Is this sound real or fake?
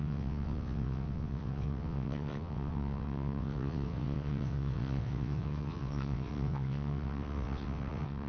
fake